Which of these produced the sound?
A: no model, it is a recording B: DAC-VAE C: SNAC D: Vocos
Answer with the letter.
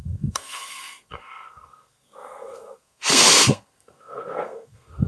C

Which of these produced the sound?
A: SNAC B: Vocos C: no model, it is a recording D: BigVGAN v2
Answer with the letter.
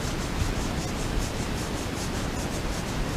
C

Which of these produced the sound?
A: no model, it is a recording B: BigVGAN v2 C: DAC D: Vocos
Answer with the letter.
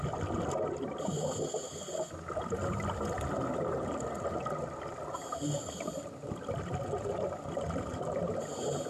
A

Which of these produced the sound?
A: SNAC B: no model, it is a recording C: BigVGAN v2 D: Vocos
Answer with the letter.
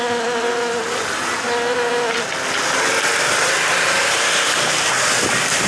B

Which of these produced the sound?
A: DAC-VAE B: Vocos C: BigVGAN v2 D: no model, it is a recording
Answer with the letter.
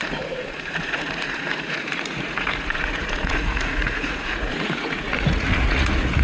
B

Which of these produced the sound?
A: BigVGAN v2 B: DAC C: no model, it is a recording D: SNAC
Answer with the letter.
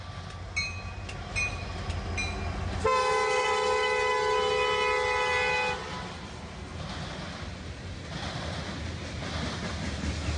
C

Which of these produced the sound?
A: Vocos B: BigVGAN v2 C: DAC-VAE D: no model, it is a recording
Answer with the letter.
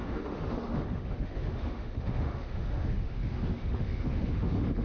C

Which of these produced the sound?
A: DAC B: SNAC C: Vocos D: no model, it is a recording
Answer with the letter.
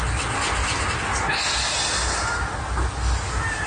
D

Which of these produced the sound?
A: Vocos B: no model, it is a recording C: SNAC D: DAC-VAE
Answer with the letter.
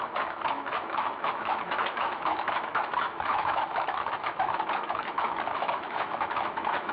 D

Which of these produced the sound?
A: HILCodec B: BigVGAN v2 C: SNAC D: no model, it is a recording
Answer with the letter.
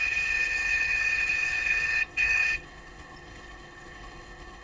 A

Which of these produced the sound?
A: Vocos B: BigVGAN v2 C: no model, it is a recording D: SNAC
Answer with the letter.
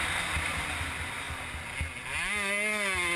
C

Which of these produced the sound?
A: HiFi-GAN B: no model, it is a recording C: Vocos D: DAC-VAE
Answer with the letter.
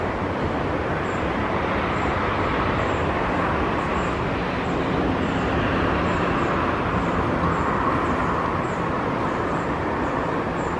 B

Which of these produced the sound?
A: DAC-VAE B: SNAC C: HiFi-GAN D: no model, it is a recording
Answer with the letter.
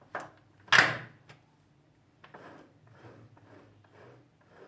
D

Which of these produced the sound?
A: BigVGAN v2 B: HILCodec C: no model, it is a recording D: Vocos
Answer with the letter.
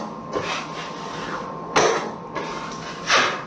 C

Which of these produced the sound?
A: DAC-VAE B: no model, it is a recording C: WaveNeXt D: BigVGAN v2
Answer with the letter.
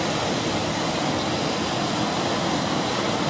B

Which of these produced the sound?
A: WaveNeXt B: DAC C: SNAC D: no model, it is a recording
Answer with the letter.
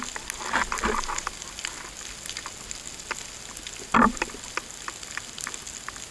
D